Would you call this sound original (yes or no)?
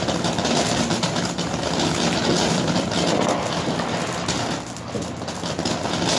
yes